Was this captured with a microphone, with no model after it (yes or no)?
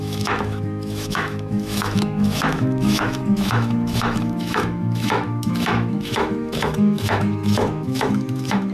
no